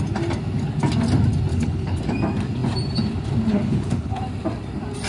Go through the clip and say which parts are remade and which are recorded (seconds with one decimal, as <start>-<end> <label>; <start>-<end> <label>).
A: 0.0-1.5 recorded; 1.5-2.0 remade; 2.0-3.5 recorded; 3.5-4.2 remade; 4.2-5.1 recorded